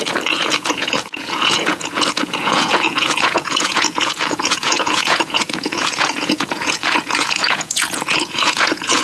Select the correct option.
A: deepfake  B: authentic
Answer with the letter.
A